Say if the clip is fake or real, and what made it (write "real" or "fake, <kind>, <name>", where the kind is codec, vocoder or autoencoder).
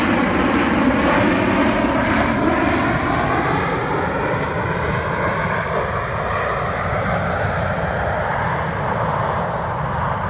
real